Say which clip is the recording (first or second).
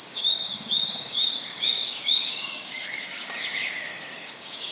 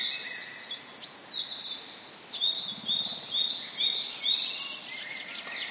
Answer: second